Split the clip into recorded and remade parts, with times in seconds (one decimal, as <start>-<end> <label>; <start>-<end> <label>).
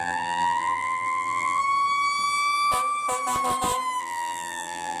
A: 0.0-1.6 remade; 1.6-4.0 recorded; 4.0-5.0 remade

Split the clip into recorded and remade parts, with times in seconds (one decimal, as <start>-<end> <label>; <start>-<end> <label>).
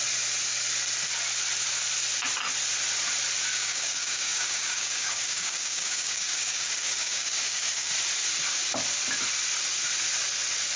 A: 0.0-3.5 recorded; 3.5-7.9 remade; 7.9-10.8 recorded